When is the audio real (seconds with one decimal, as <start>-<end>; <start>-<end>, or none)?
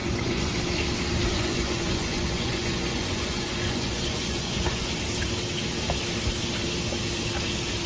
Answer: 0.5-1.3; 4.9-7.9